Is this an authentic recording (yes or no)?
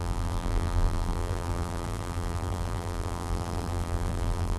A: no